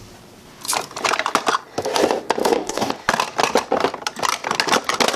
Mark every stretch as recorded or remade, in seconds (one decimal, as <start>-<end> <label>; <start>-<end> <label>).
0.0-2.4 recorded; 2.4-2.9 remade; 2.9-5.2 recorded